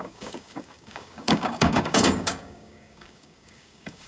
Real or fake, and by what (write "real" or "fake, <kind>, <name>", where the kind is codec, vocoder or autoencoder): fake, codec, DAC